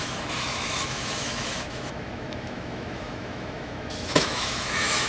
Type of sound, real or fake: fake